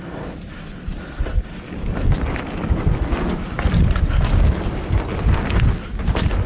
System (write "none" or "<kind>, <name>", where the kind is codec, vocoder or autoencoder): none